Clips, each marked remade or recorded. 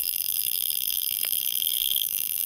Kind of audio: remade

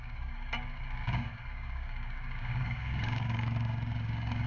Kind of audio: remade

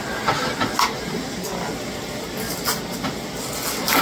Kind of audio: recorded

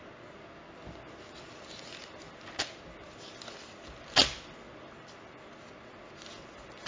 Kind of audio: recorded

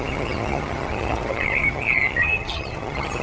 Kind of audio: remade